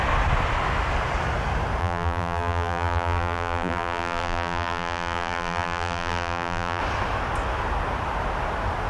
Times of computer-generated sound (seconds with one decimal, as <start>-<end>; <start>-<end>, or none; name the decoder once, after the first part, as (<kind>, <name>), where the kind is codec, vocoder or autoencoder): 1.8-6.8 (vocoder, BigVGAN v2)